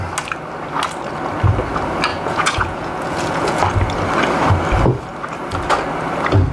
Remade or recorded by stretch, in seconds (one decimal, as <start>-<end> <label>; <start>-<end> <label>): 0.0-2.1 recorded; 2.1-3.6 remade; 3.6-6.5 recorded